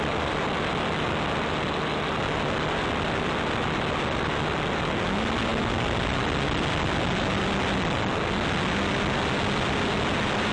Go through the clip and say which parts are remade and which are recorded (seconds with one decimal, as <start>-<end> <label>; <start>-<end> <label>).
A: 0.0-10.5 recorded